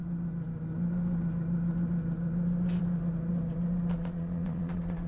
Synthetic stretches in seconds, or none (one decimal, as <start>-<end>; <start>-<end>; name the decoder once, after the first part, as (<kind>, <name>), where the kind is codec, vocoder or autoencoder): 3.9-5.1 (vocoder, Vocos)